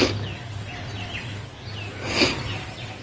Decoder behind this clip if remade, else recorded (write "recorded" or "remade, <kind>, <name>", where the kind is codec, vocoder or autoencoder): recorded